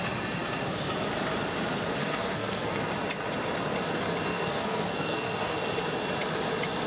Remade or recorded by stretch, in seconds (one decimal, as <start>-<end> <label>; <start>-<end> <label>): 0.0-2.0 recorded; 2.0-2.8 remade; 2.8-4.3 recorded; 4.3-5.6 remade; 5.6-6.9 recorded